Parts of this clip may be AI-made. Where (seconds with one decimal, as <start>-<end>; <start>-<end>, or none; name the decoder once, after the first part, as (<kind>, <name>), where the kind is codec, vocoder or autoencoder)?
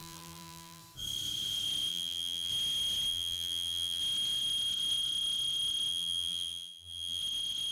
0.0-0.8 (vocoder, BigVGAN v2); 1.9-2.5; 3.1-4.0; 5.9-7.2